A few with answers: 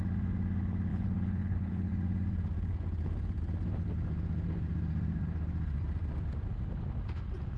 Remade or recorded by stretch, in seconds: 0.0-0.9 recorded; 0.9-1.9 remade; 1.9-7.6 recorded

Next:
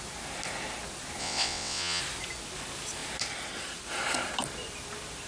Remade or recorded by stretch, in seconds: 0.0-1.2 recorded; 1.2-2.0 remade; 2.0-5.3 recorded

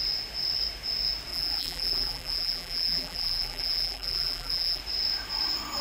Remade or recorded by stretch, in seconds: 0.0-1.3 recorded; 1.3-4.8 remade; 4.8-5.8 recorded

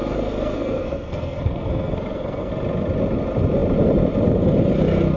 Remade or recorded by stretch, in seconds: 0.0-2.5 remade; 2.5-5.2 recorded

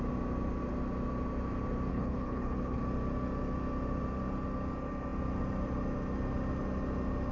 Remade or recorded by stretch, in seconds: 0.0-1.9 recorded; 1.9-2.8 remade; 2.8-7.3 recorded

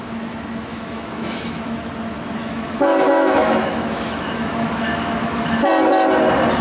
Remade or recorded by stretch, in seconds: 0.0-0.7 recorded; 0.7-1.9 remade; 1.9-2.4 recorded; 2.4-5.7 remade; 5.7-6.6 recorded